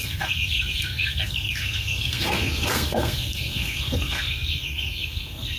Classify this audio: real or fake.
fake